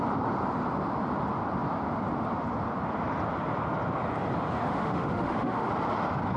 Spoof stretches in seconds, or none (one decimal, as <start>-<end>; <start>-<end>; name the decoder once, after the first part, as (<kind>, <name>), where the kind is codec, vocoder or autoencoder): 4.7-5.7 (autoencoder, DAC-VAE)